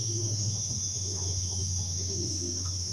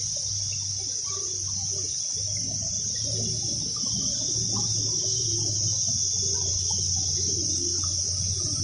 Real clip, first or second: second